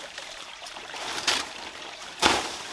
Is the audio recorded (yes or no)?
no